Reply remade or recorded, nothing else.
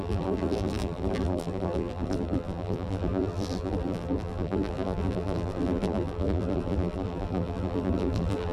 remade